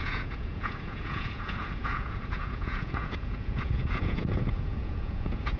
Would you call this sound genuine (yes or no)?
no